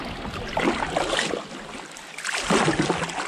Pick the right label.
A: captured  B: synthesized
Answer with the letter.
A